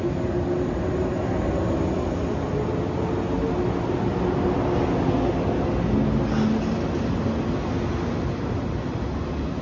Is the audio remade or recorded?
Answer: recorded